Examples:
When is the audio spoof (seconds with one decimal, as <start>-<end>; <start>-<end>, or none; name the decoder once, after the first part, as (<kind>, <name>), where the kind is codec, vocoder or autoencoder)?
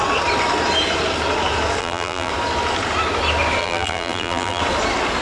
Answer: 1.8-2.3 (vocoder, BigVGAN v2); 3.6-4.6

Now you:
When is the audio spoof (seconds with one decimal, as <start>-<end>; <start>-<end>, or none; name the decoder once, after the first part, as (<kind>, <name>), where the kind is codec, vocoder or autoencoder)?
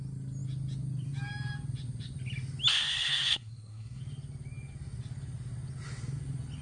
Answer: 2.7-4.0 (codec, SNAC)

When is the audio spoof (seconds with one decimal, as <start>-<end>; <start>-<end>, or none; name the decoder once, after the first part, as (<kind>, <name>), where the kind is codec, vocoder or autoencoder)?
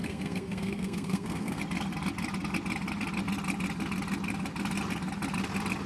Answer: 0.0-1.6 (codec, SNAC)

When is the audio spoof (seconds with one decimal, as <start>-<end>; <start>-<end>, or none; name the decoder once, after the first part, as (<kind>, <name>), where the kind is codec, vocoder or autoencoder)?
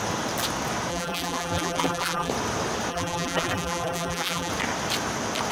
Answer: 0.9-2.3 (vocoder, BigVGAN v2); 2.9-4.5